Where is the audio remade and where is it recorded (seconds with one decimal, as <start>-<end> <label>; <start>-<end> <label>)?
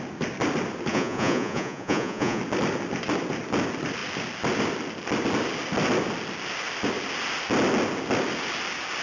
0.0-0.9 recorded; 0.9-2.4 remade; 2.4-9.0 recorded